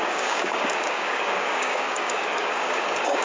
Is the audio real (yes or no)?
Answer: no